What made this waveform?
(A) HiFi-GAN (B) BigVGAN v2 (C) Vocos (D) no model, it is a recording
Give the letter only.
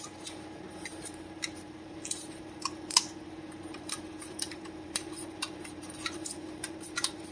B